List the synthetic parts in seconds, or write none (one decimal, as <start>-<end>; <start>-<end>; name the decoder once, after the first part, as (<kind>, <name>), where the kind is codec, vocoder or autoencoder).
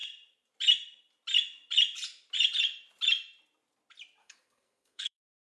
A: 4.2-5.4 (codec, SNAC)